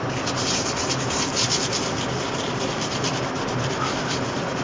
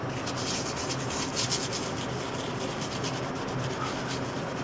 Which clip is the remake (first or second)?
first